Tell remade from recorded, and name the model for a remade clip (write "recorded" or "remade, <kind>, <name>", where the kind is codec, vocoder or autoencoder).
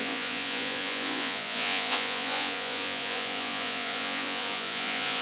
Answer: remade, vocoder, Vocos